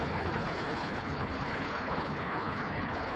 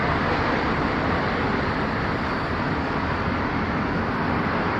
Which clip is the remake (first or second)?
first